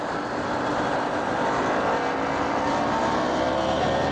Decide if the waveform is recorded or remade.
recorded